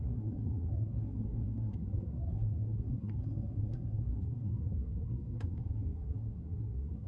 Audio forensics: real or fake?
fake